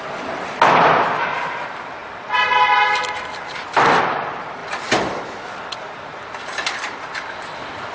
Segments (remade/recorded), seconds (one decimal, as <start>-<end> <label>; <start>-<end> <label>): 0.0-4.6 recorded; 4.6-5.2 remade; 5.2-7.9 recorded